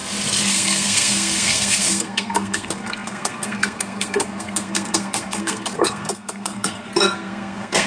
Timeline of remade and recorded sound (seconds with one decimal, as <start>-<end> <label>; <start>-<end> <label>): 0.0-0.5 recorded; 0.5-7.9 remade